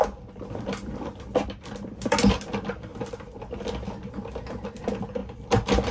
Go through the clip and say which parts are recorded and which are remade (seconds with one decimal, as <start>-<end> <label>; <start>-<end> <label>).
0.0-5.9 recorded